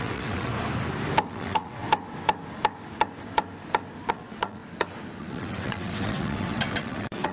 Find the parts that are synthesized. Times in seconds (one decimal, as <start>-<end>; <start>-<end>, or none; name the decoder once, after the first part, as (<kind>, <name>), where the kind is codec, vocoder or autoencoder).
0.0-0.5 (vocoder, WaveNeXt); 1.3-1.8; 4.1-4.6; 5.2-7.3